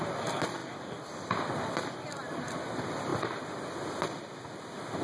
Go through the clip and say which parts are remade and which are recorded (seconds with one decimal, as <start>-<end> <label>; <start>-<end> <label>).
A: 0.0-0.6 recorded; 0.6-1.8 remade; 1.8-5.0 recorded